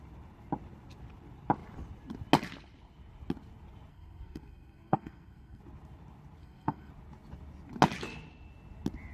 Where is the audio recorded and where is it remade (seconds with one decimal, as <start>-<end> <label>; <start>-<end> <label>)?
0.0-3.9 recorded; 3.9-5.6 remade; 5.6-6.4 recorded; 6.4-6.9 remade; 6.9-9.1 recorded

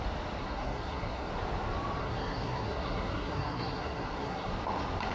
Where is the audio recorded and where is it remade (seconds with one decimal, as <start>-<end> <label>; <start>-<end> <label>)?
0.0-0.4 recorded; 0.4-1.3 remade; 1.3-2.0 recorded; 2.0-4.5 remade; 4.5-5.1 recorded

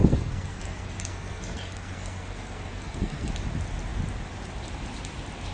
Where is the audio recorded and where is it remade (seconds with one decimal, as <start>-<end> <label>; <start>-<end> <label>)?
0.0-3.3 remade; 3.3-5.5 recorded

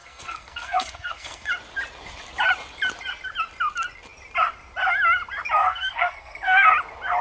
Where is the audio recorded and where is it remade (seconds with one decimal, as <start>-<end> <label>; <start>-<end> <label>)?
0.0-1.5 remade; 1.5-5.6 recorded; 5.6-6.7 remade; 6.7-7.2 recorded

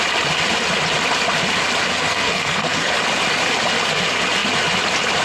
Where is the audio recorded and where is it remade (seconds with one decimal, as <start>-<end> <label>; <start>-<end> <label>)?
0.0-1.9 recorded; 1.9-2.9 remade; 2.9-5.2 recorded